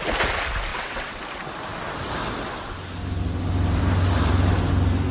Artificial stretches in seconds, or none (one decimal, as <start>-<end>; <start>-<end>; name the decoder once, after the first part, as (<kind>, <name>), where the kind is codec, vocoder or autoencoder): 0.7-1.2 (vocoder, WaveNeXt)